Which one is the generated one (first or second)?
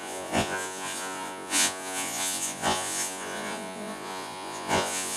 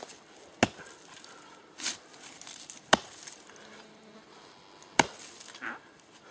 first